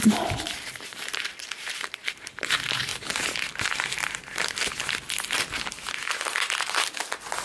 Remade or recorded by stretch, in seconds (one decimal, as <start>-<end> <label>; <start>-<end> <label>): 0.0-2.9 remade; 2.9-7.4 recorded